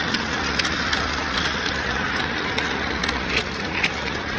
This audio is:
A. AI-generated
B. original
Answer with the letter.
A